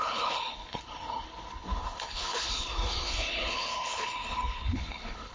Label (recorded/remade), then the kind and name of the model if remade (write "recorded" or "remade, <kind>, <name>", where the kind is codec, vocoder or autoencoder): remade, codec, HILCodec